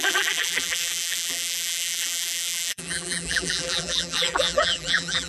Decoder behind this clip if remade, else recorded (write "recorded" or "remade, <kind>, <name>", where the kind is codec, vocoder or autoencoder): remade, vocoder, BigVGAN v2